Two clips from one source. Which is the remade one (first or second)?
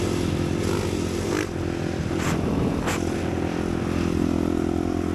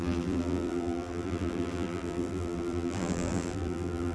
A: second